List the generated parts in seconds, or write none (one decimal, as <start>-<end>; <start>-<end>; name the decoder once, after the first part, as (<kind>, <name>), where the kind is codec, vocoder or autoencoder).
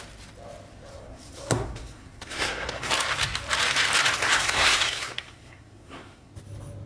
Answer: 0.9-2.9 (codec, SNAC); 4.1-6.3